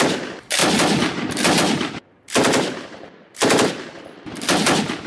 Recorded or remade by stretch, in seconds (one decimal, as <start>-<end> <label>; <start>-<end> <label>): 0.0-5.1 remade